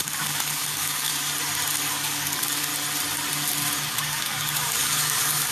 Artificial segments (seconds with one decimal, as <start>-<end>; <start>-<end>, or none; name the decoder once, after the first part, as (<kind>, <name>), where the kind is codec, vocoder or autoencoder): 0.0-1.1 (codec, DAC); 1.9-2.7; 3.9-5.5